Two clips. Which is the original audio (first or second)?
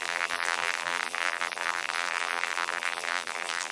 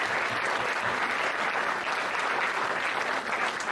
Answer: second